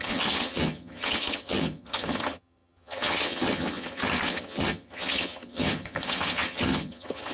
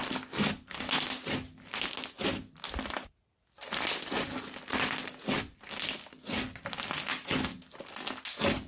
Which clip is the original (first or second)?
second